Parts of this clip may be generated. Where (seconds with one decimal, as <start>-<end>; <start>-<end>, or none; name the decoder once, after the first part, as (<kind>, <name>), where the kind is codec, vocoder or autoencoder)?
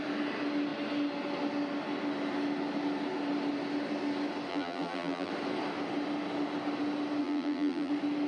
4.5-5.3 (vocoder, BigVGAN v2); 7.2-7.9